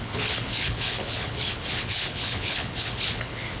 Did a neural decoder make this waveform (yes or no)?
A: yes